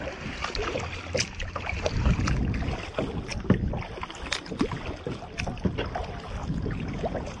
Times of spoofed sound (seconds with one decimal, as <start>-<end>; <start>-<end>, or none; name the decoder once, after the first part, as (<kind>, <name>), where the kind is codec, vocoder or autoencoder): 6.4-7.4 (vocoder, Vocos)